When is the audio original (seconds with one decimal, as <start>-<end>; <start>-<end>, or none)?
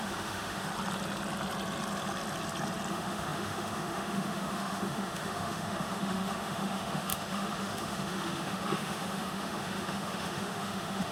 0.7-2.9